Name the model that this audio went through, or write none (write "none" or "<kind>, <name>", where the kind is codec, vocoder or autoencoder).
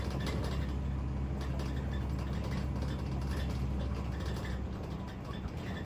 none